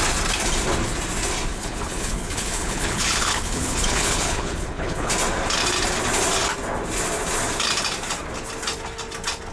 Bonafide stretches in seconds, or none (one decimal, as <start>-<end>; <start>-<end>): 0.0-1.5; 5.1-9.5